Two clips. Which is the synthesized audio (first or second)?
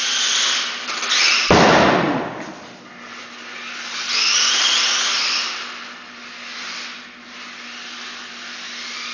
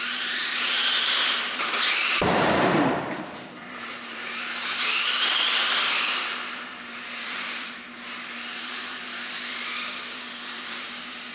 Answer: second